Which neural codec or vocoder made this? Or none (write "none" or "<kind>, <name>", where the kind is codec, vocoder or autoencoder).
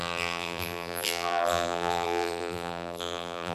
vocoder, BigVGAN v2